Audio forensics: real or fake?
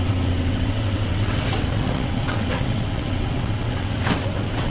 fake